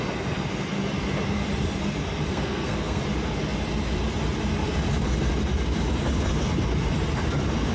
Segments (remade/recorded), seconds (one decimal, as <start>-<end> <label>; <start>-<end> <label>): 0.0-2.3 recorded; 2.3-3.0 remade; 3.0-7.7 recorded